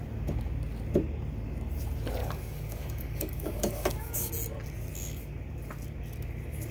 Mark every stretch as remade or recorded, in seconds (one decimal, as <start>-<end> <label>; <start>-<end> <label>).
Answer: 0.0-2.2 recorded; 2.2-4.3 remade; 4.3-6.7 recorded